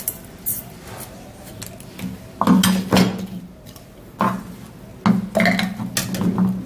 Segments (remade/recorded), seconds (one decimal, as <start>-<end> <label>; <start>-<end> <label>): 0.0-6.7 recorded